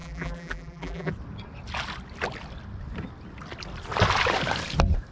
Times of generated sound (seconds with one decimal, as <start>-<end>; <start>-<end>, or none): 0.0-1.1

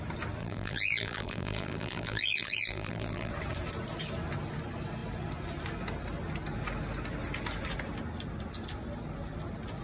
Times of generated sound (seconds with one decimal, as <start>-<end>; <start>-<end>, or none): 0.4-3.3

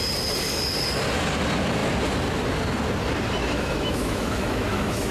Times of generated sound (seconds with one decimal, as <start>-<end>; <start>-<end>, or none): 3.4-5.1

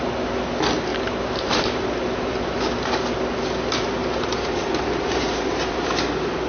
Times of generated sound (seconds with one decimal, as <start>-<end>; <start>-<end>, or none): 0.9-2.6; 4.0-6.0

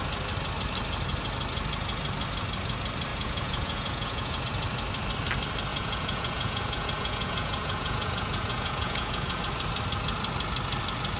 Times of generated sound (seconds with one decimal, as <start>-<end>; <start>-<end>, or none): 3.1-4.4; 5.7-9.4

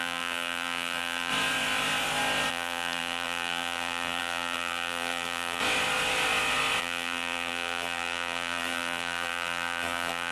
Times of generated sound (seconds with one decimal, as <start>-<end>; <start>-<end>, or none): 0.0-1.3; 2.5-5.6; 6.8-10.3

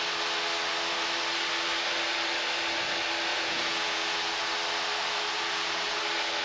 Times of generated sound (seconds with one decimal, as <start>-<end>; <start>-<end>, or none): 3.3-4.5; 5.3-6.0